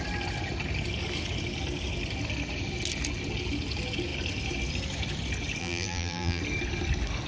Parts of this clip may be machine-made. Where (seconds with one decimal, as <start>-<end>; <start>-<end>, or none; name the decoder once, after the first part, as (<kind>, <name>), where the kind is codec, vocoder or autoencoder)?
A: 5.6-6.4 (vocoder, BigVGAN v2)